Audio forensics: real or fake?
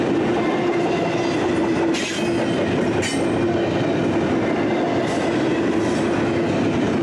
real